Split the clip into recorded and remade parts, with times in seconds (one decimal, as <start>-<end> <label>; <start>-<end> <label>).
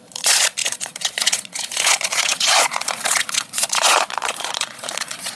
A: 0.0-5.3 remade